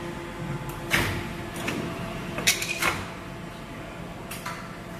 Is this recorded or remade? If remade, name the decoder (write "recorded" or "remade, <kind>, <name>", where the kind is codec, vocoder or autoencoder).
recorded